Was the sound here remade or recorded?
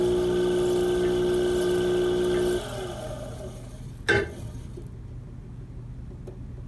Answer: recorded